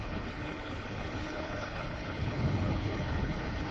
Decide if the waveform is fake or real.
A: fake